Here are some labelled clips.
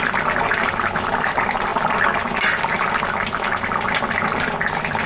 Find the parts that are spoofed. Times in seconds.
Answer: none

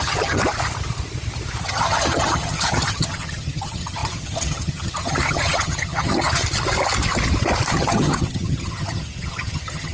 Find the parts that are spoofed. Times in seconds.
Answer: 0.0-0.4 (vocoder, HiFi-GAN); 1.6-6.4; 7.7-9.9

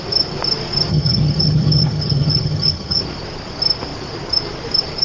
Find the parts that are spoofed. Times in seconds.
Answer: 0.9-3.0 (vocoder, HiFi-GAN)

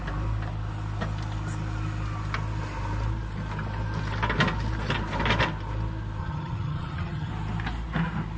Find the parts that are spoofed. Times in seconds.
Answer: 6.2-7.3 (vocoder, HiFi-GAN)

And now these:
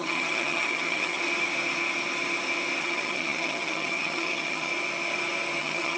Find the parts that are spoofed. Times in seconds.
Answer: 0.0-1.2 (vocoder, HiFi-GAN); 2.8-4.7; 5.6-6.0

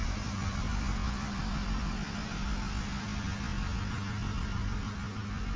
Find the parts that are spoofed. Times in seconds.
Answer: none

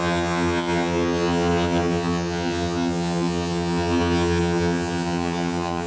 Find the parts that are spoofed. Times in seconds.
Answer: 0.0-5.9 (vocoder, HiFi-GAN)